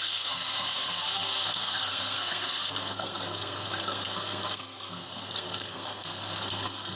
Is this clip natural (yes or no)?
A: no